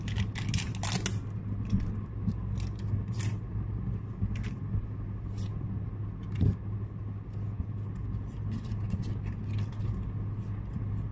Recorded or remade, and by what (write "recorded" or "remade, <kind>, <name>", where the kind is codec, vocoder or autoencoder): recorded